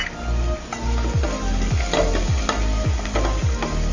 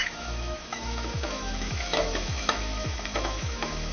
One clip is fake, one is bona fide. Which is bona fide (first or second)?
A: first